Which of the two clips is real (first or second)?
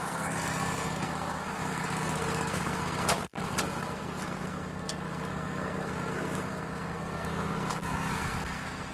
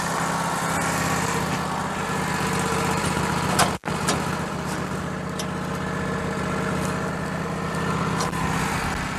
second